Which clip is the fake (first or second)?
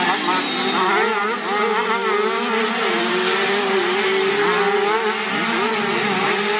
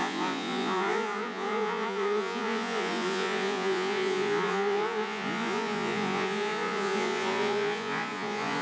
second